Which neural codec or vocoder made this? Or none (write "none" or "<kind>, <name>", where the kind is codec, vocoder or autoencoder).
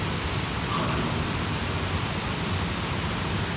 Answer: none